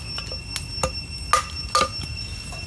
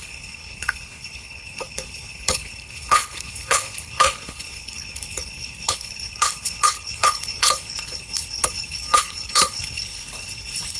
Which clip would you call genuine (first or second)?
first